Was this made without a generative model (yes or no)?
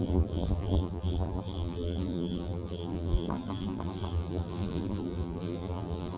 no